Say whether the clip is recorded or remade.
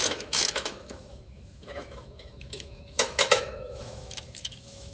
remade